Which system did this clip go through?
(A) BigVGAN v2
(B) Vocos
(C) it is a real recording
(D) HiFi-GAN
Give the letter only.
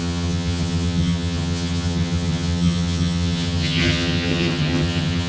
D